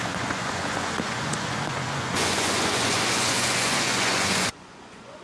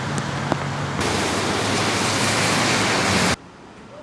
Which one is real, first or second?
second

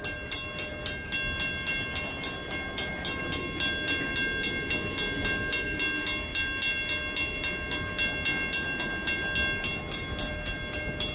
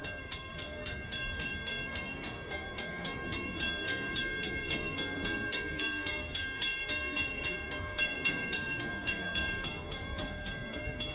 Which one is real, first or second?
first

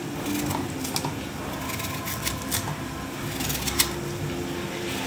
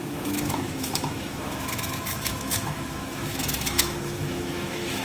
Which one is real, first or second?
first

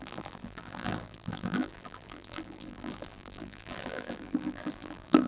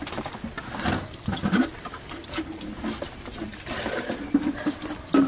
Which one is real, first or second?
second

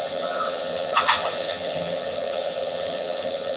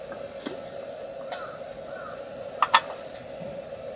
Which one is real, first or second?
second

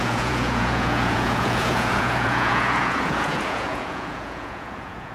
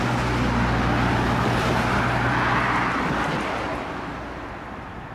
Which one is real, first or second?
second